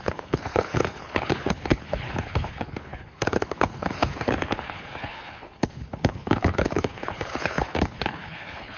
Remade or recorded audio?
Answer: remade